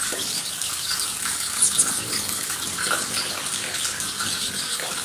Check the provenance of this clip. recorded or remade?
remade